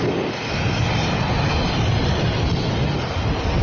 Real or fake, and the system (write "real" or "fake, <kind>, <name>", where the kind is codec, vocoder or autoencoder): real